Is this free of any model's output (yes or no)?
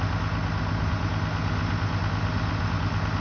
yes